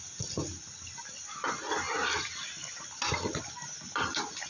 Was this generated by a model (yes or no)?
no